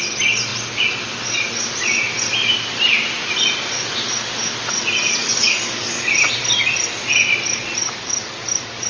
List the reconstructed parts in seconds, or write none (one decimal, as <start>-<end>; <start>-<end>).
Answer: 5.2-6.0; 7.8-8.9